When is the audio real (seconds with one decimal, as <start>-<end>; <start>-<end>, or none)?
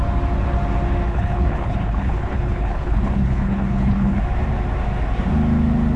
0.0-1.1; 4.2-6.0